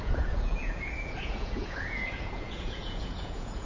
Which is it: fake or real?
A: fake